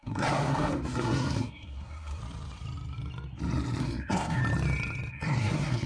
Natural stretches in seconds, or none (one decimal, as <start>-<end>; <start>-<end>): 2.2-3.8; 4.4-5.1